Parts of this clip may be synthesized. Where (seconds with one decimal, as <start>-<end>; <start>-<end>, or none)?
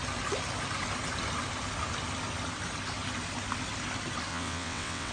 4.3-5.1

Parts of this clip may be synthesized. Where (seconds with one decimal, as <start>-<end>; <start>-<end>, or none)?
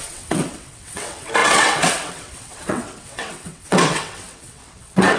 0.0-5.2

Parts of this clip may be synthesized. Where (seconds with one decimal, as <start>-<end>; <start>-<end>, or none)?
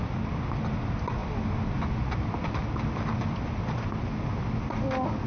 none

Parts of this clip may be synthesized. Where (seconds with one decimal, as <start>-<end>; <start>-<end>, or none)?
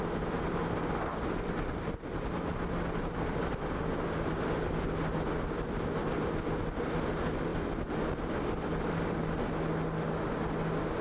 none